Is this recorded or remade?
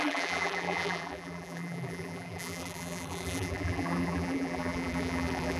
remade